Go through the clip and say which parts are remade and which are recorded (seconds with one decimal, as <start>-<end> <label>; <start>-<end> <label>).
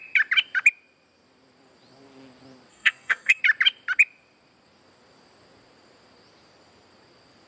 0.0-2.7 recorded; 2.7-3.4 remade; 3.4-7.5 recorded